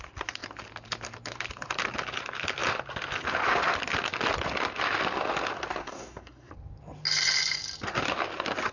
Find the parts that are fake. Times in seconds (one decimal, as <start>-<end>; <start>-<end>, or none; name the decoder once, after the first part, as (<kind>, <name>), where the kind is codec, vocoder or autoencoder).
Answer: 5.8-6.5 (codec, SNAC)